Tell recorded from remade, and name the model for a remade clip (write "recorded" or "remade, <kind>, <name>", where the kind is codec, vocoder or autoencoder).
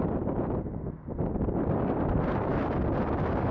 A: recorded